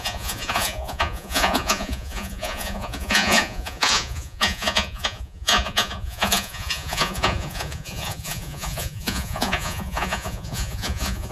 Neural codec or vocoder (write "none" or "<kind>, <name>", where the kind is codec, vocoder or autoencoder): vocoder, Vocos